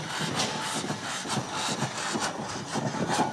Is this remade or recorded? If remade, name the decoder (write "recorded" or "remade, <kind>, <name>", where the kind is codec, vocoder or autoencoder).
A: recorded